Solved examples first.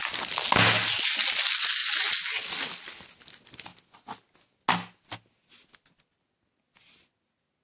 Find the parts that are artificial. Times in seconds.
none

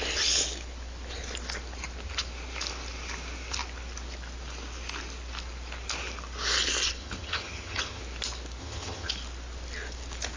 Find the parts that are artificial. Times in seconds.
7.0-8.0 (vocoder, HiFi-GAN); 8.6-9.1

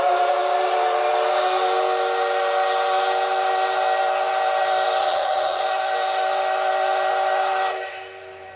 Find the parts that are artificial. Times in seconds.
5.0-5.6 (vocoder, HiFi-GAN)

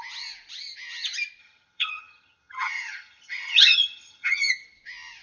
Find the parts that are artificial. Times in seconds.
1.4-4.5 (vocoder, HiFi-GAN)

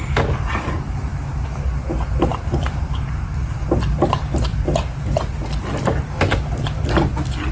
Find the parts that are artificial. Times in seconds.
none

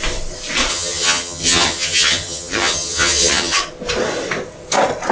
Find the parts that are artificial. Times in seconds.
0.7-3.6 (vocoder, HiFi-GAN)